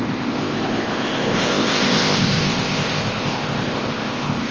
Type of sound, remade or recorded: remade